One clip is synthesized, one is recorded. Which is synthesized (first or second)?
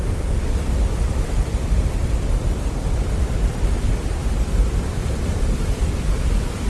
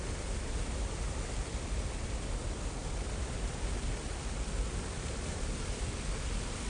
first